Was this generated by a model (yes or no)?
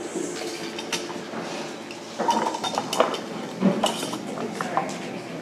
no